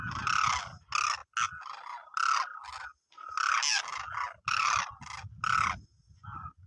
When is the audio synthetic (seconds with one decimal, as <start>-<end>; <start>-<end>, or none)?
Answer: none